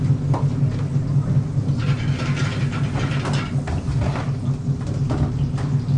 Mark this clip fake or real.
real